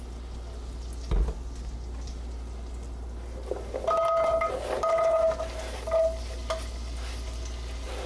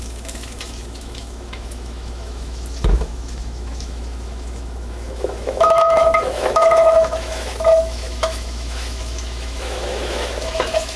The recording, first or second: first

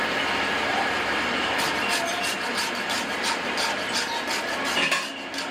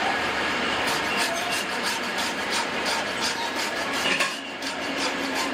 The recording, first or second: first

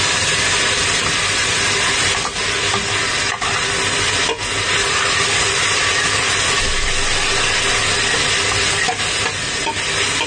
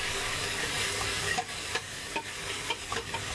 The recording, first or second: first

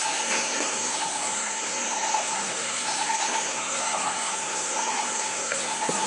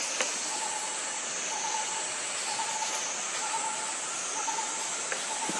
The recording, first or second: second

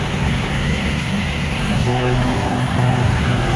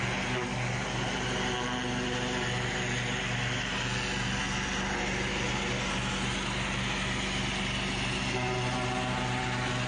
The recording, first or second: second